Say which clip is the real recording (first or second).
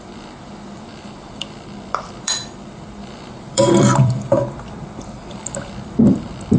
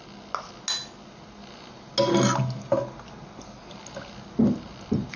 second